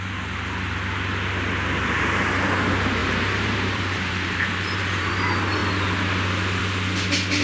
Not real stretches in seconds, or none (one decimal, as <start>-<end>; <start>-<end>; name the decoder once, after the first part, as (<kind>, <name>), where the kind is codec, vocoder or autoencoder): 3.0-5.1 (vocoder, BigVGAN v2)